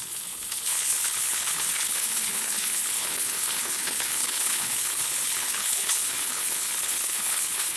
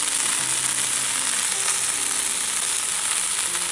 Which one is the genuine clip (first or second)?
second